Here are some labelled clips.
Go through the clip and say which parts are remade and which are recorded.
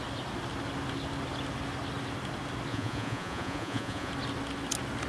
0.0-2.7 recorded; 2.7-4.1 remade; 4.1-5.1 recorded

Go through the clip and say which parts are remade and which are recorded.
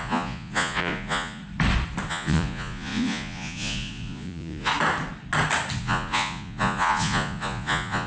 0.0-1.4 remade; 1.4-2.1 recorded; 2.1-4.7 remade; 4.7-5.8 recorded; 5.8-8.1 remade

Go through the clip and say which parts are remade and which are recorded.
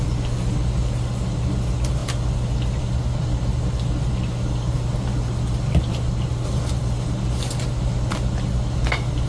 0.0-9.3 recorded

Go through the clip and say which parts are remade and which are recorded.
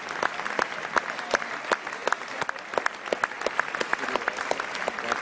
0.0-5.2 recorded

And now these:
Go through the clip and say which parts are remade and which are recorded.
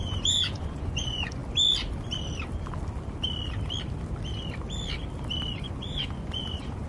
0.0-1.4 remade; 1.4-5.5 recorded; 5.5-6.9 remade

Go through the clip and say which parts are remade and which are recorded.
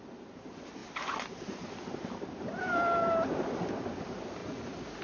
0.0-4.4 recorded; 4.4-5.0 remade